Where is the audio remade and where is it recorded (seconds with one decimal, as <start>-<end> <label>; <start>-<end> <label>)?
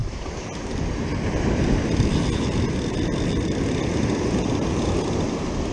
0.0-5.7 remade